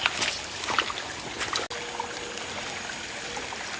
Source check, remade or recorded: recorded